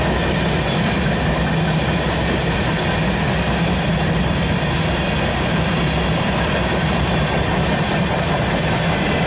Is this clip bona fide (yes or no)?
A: yes